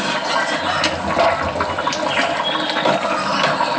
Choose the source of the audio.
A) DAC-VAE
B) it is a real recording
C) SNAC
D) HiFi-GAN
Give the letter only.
B